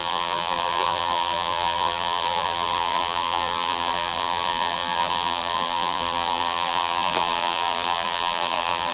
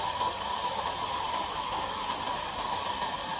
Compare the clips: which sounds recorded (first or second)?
second